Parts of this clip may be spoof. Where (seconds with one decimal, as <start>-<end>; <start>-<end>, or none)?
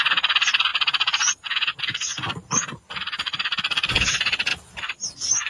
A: 0.0-0.7; 1.8-5.5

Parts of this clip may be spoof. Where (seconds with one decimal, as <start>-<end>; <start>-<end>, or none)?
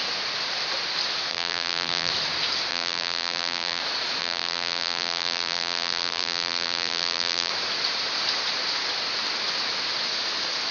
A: 1.3-2.1; 2.7-3.8; 4.2-7.5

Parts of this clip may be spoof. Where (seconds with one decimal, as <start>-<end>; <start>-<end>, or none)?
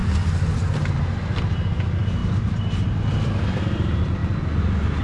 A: none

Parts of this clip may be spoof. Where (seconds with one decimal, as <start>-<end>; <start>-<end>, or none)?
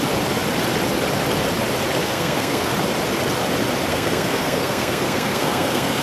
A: 2.0-2.7; 3.9-6.0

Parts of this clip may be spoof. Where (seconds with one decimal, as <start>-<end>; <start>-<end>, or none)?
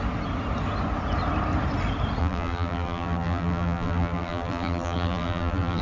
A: 2.2-5.8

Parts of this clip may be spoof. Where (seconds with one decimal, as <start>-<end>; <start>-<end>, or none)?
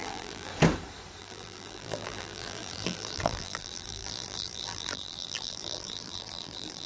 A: 0.0-0.5; 1.2-6.9